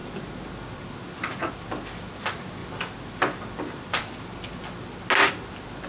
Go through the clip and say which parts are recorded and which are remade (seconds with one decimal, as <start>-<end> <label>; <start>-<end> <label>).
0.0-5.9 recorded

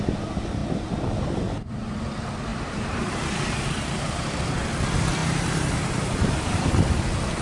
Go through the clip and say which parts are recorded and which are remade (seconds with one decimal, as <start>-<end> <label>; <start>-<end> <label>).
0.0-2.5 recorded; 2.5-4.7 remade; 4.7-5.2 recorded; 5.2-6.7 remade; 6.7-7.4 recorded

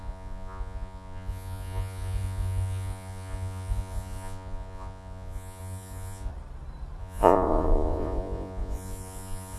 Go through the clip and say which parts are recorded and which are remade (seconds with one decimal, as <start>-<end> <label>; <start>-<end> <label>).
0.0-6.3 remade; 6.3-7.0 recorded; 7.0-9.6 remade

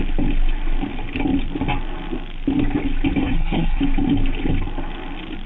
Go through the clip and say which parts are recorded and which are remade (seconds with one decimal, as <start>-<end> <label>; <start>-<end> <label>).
0.0-3.2 recorded; 3.2-3.8 remade; 3.8-5.5 recorded

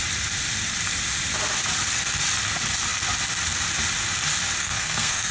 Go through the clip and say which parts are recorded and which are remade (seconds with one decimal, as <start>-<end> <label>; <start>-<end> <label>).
0.0-4.6 recorded; 4.6-5.3 remade

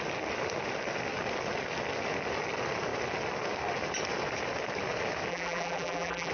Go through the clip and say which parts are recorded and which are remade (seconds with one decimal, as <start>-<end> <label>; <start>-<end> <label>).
0.0-5.3 recorded; 5.3-6.3 remade